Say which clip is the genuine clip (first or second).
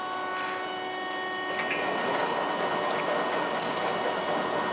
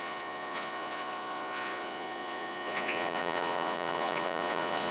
first